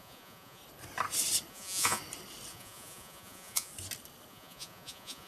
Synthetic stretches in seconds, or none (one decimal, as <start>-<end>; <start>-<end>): 0.0-0.6; 1.5-2.0; 2.5-3.7; 4.3-5.3